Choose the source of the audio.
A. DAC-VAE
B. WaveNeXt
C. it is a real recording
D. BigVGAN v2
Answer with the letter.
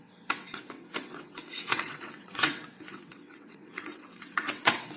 B